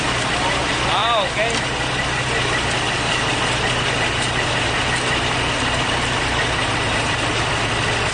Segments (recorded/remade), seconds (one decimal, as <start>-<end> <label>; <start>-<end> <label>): 0.0-8.1 recorded